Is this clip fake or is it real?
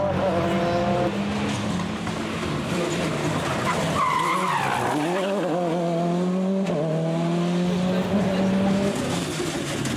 real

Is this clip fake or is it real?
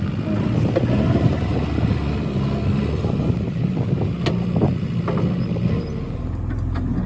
real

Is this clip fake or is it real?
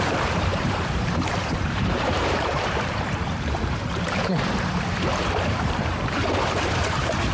fake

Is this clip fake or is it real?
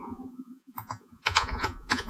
fake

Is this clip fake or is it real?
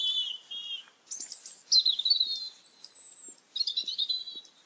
real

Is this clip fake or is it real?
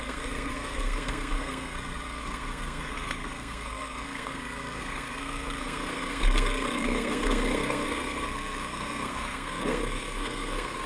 fake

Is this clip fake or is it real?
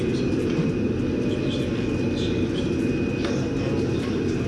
real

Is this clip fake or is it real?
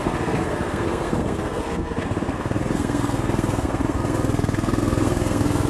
fake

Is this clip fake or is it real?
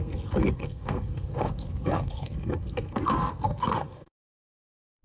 fake